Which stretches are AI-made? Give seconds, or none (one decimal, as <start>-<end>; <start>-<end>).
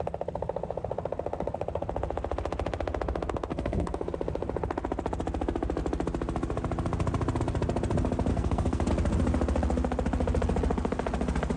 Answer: 3.5-4.1; 8.3-8.9